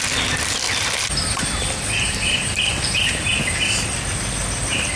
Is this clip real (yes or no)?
yes